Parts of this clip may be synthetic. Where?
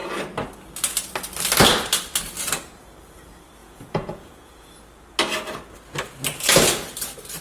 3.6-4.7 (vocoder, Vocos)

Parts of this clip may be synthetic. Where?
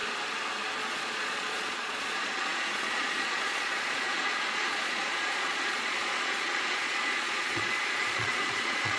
0.8-9.0 (vocoder, Vocos)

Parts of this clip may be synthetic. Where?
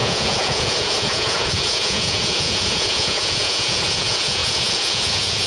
0.0-5.5 (vocoder, Vocos)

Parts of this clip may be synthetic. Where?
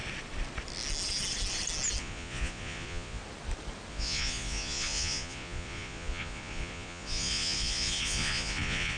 2.0-3.2 (vocoder, Vocos); 3.9-9.0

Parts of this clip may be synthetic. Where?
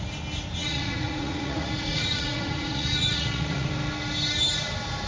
0.6-3.7 (vocoder, Vocos)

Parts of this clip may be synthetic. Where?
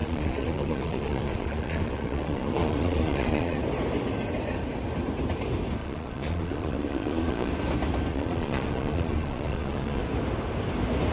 0.0-3.6 (vocoder, Vocos); 5.8-7.5; 8.1-10.0